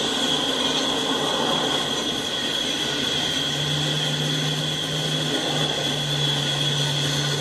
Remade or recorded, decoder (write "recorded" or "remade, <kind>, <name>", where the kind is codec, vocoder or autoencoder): recorded